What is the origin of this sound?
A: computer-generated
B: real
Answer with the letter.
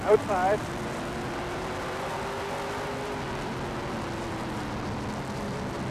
B